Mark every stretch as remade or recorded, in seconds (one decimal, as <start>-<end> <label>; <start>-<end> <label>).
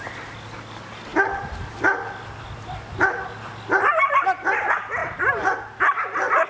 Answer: 0.0-6.5 recorded